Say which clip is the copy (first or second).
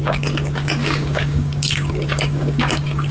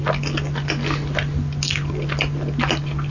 first